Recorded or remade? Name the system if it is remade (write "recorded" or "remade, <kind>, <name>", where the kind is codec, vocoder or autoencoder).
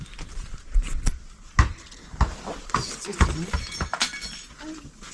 recorded